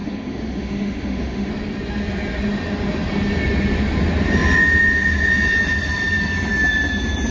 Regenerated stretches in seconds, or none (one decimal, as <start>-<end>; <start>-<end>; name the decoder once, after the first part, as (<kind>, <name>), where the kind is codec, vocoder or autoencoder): 0.0-1.5 (autoencoder, DAC-VAE)